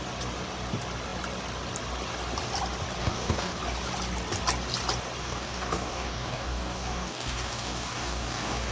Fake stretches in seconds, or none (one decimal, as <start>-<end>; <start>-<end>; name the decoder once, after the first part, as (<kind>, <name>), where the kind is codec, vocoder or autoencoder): 3.0-3.6 (codec, DAC); 5.2-8.7